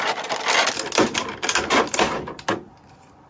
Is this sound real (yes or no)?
yes